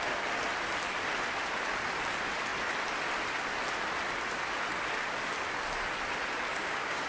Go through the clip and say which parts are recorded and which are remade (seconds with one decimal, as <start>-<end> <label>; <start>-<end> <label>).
0.0-6.5 recorded; 6.5-7.1 remade